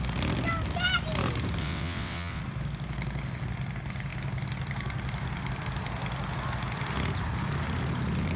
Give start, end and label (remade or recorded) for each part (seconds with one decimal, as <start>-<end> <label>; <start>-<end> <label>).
0.0-1.6 recorded; 1.6-2.4 remade; 2.4-8.4 recorded